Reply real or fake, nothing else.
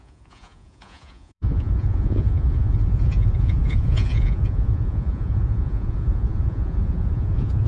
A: fake